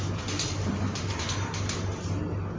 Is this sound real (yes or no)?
yes